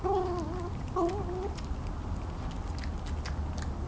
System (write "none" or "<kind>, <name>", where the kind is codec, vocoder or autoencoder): none